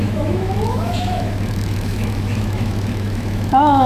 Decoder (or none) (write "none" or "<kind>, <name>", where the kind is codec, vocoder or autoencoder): autoencoder, DAC-VAE